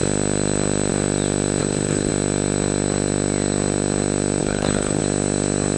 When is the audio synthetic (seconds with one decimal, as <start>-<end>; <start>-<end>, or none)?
1.6-2.1; 4.4-5.0